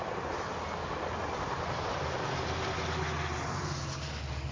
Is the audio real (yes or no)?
yes